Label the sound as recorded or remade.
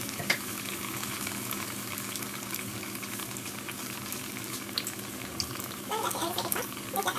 remade